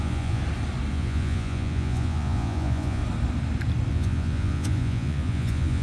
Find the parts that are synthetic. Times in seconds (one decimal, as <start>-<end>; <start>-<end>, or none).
0.0-0.4; 0.9-3.0; 3.9-5.8